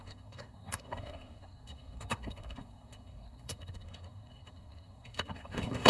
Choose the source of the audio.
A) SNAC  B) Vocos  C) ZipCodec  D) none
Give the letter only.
A